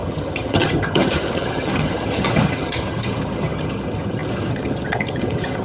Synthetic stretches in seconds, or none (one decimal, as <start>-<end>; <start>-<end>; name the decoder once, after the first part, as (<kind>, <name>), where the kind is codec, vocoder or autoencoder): 0.0-5.6 (vocoder, HiFi-GAN)